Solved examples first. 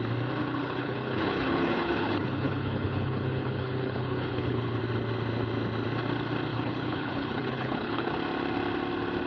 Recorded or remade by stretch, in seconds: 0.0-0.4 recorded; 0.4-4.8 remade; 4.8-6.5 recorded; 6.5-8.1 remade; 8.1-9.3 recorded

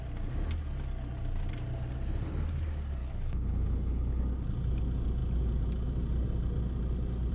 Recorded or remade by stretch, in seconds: 0.0-3.0 recorded; 3.0-4.2 remade; 4.2-7.3 recorded

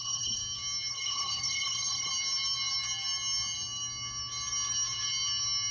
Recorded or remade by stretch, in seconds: 0.0-0.4 remade; 0.4-0.9 recorded; 0.9-2.1 remade; 2.1-5.7 recorded

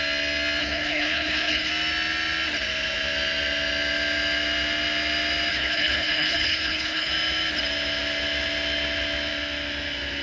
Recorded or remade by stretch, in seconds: 0.0-0.6 recorded; 0.6-1.7 remade; 1.7-5.5 recorded; 5.5-7.1 remade; 7.1-10.2 recorded

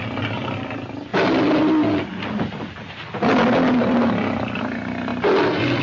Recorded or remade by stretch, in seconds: 0.0-5.8 recorded

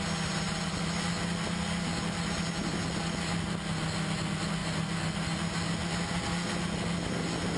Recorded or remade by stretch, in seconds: 0.0-7.6 recorded